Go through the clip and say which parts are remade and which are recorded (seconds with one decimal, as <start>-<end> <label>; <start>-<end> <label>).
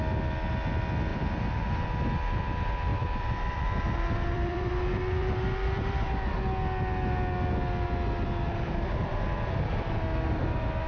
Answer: 0.0-1.1 recorded; 1.1-2.4 remade; 2.4-2.9 recorded; 2.9-4.7 remade; 4.7-5.2 recorded; 5.2-6.1 remade; 6.1-10.9 recorded